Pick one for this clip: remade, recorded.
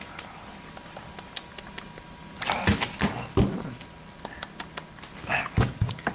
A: recorded